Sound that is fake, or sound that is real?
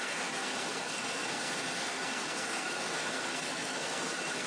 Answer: fake